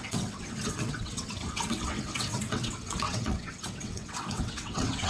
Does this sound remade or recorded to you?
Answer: remade